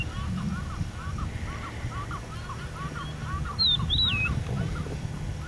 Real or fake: real